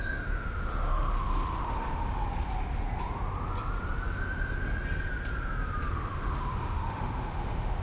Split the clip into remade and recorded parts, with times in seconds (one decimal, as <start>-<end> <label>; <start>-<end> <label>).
0.0-2.2 remade; 2.2-5.9 recorded; 5.9-7.8 remade